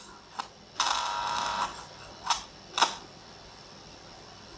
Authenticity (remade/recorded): recorded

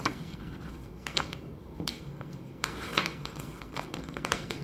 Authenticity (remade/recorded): remade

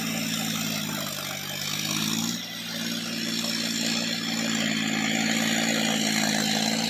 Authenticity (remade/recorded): recorded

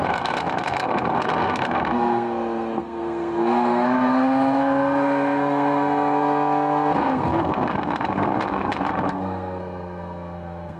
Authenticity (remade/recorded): remade